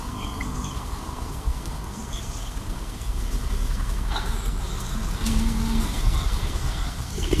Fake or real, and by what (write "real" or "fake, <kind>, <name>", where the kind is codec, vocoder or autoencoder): fake, codec, SNAC